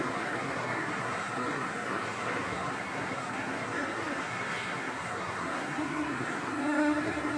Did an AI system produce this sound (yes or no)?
yes